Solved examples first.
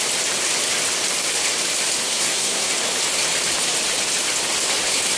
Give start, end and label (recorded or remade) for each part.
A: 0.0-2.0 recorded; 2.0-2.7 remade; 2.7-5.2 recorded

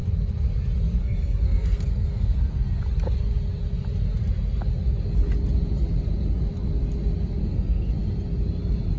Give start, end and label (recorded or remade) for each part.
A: 0.0-1.0 recorded; 1.0-2.8 remade; 2.8-7.4 recorded; 7.4-7.9 remade; 7.9-9.0 recorded